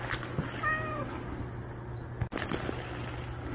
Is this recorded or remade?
recorded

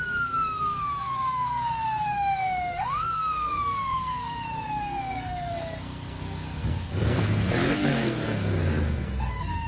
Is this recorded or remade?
remade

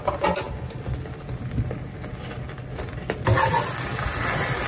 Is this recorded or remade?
recorded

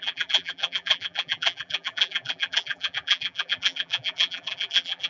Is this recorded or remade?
remade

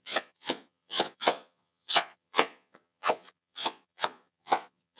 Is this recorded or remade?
remade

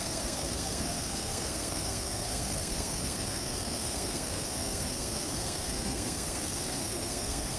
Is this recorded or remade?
remade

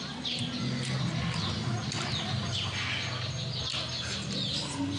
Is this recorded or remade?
recorded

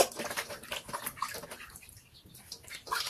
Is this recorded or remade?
recorded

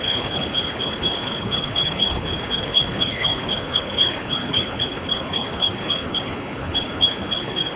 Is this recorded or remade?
remade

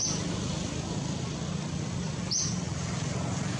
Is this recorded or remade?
recorded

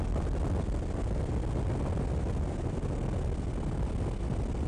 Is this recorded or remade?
recorded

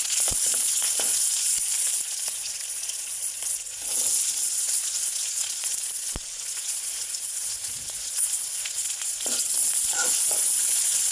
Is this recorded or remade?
remade